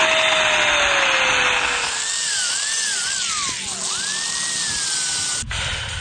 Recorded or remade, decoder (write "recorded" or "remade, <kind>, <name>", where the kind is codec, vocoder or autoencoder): recorded